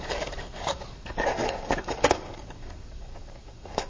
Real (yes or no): no